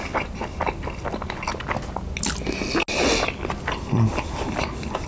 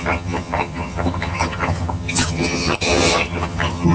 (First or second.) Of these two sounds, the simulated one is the second